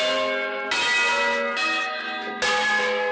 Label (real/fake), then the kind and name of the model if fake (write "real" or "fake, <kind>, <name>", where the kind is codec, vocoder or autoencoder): real